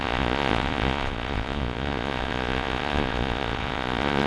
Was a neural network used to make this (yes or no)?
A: yes